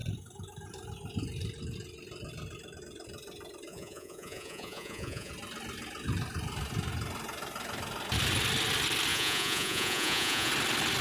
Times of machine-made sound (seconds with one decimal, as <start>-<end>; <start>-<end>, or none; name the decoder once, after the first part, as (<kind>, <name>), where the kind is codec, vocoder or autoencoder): 3.7-5.3 (vocoder, Vocos); 9.1-10.5